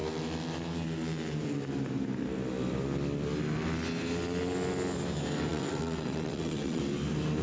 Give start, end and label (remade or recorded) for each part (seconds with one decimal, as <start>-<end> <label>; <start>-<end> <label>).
0.0-5.5 recorded; 5.5-6.8 remade; 6.8-7.4 recorded

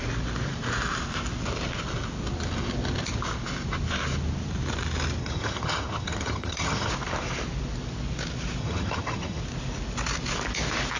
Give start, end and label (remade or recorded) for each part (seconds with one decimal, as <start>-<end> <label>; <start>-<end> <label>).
0.0-5.2 recorded; 5.2-6.9 remade; 6.9-8.6 recorded; 8.6-9.4 remade; 9.4-11.0 recorded

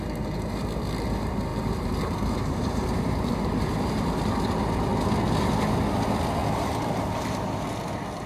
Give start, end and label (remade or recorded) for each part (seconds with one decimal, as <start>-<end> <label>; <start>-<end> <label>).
0.0-1.5 recorded; 1.5-4.2 remade; 4.2-6.4 recorded; 6.4-7.6 remade; 7.6-8.3 recorded

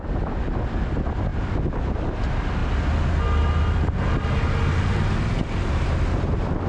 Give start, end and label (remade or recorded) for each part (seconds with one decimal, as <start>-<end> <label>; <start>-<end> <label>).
0.0-6.7 recorded

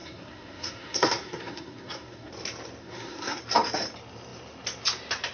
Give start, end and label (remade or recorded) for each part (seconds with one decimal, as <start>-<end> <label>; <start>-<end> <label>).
0.0-2.3 remade; 2.3-2.8 recorded; 2.8-3.4 remade; 3.4-5.3 recorded

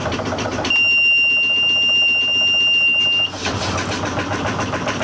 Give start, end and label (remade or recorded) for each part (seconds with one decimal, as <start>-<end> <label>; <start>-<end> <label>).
0.0-5.0 recorded

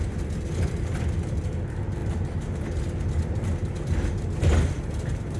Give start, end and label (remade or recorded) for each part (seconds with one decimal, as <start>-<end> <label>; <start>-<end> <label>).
0.0-5.4 recorded

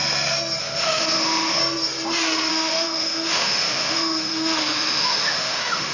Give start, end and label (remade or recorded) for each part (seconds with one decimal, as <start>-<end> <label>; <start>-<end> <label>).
0.0-0.6 recorded; 0.6-1.6 remade; 1.6-2.5 recorded; 2.5-5.9 remade